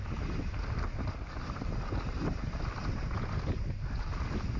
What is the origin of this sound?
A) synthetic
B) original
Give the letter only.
B